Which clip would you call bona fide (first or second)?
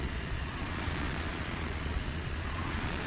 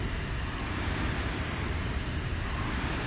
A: second